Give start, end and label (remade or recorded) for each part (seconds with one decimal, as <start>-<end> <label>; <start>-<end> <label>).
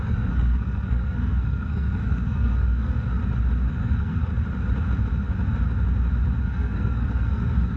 0.0-3.2 remade; 3.2-3.7 recorded; 3.7-4.3 remade; 4.3-6.4 recorded; 6.4-7.8 remade